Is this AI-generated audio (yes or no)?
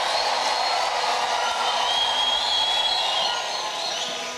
no